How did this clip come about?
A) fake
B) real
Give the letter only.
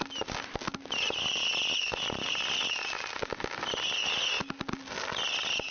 B